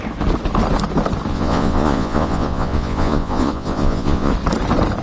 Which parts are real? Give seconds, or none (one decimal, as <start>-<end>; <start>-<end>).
0.0-1.3; 4.3-5.0